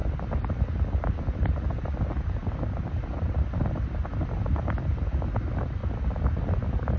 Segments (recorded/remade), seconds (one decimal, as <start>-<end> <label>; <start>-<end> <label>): 0.0-7.0 recorded